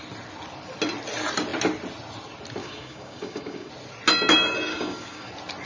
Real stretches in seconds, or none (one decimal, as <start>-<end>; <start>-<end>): 0.0-2.6; 3.7-4.7; 5.3-5.7